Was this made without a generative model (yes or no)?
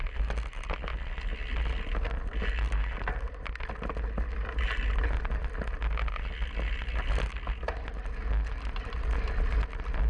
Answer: yes